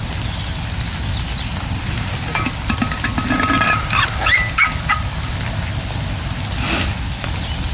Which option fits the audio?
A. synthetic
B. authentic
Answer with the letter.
B